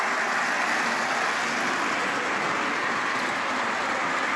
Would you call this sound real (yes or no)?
yes